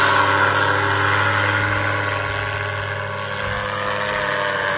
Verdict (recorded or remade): recorded